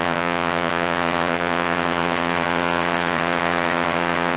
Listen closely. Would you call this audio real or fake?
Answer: fake